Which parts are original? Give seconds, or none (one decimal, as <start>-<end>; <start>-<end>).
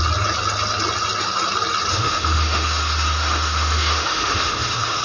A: 0.0-1.9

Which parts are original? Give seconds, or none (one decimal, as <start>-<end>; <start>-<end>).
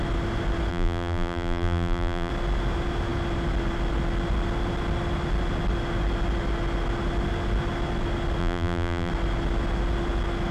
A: 0.0-0.7; 2.3-8.4; 9.1-10.5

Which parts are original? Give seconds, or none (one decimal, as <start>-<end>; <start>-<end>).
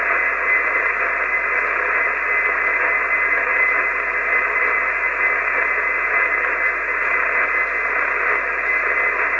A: 0.0-9.4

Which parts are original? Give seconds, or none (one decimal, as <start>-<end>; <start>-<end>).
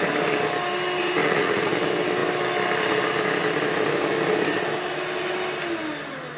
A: 0.0-1.2; 1.7-6.4